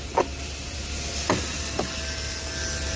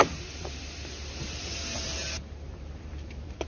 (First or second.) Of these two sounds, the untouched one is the first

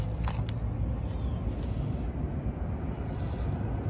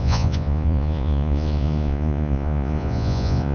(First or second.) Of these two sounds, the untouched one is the first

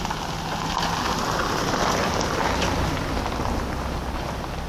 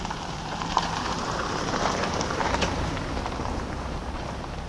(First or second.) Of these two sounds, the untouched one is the first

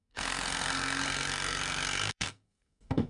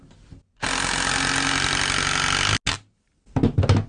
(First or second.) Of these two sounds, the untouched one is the second